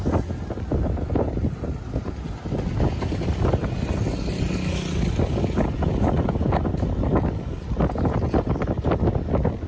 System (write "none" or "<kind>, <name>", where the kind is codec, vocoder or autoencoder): none